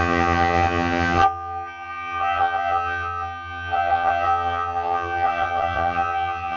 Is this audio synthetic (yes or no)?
yes